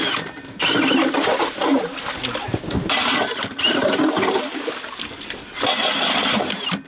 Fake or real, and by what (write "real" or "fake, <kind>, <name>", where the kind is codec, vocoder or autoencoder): real